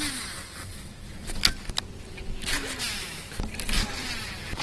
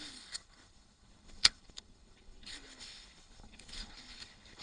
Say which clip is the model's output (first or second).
second